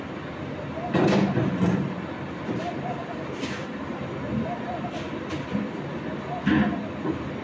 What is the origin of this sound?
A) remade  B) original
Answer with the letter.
B